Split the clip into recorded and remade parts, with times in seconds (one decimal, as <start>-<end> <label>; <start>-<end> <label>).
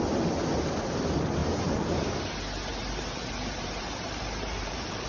0.0-1.4 recorded; 1.4-2.2 remade; 2.2-2.7 recorded; 2.7-5.1 remade